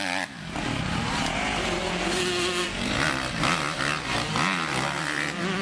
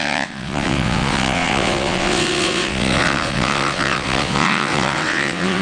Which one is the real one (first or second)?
first